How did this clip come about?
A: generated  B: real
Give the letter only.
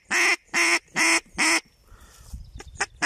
B